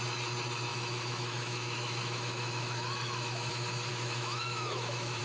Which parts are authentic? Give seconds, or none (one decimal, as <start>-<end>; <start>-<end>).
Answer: 0.0-0.7; 3.5-3.9